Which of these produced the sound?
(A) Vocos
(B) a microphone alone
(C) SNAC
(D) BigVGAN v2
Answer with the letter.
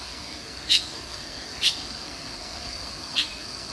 C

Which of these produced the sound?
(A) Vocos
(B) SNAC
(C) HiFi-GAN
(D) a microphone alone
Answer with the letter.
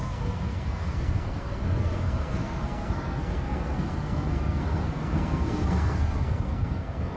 B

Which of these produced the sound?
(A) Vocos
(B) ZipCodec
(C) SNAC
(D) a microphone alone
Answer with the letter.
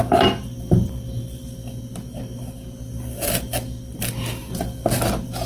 D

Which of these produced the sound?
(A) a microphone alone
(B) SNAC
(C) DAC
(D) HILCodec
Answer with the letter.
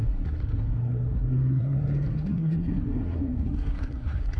B